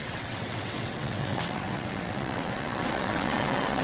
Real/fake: fake